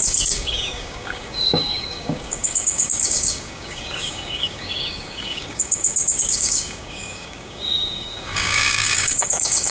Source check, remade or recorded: remade